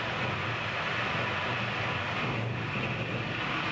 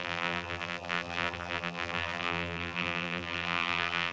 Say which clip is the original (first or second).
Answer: first